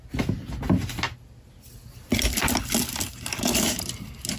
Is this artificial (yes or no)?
no